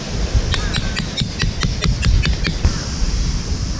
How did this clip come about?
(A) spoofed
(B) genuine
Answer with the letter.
B